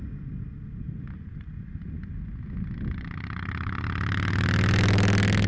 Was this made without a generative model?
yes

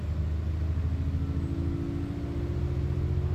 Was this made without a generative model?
yes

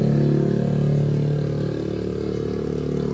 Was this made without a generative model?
yes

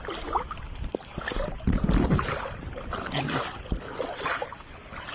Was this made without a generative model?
yes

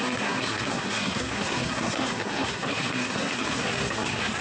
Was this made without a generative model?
no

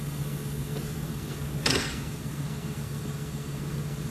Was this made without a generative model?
no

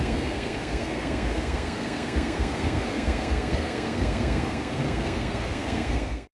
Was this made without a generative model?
no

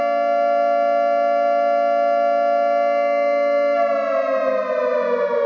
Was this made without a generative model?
yes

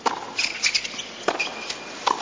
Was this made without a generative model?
yes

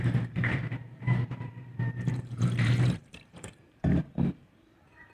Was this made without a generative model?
no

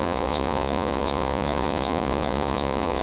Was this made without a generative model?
no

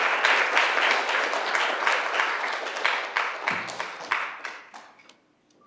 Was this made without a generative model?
yes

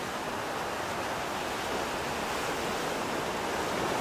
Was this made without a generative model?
yes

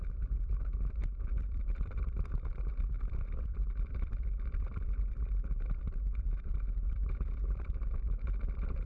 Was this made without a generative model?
no